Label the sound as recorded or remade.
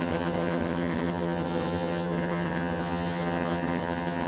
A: remade